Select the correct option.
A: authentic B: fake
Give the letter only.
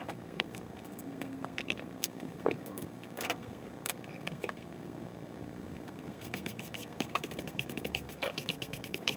B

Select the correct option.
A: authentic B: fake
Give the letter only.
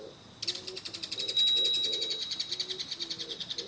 A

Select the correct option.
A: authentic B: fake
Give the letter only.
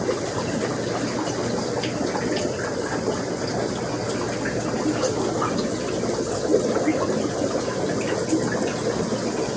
A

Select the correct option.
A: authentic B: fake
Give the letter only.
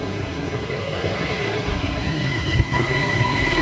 B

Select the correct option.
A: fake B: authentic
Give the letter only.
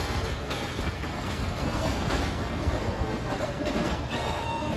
A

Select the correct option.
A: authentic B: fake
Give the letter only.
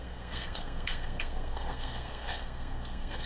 B